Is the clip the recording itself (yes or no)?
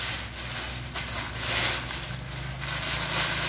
yes